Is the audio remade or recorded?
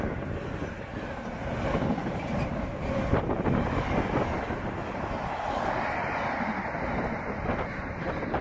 recorded